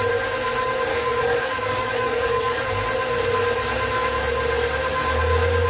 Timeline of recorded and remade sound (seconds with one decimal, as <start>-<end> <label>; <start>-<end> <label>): 0.0-0.9 recorded; 0.9-2.7 remade; 2.7-5.7 recorded